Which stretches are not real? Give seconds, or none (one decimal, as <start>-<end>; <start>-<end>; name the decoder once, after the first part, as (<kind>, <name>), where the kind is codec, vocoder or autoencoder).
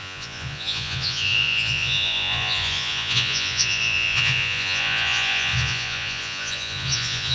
0.0-7.3 (vocoder, Vocos)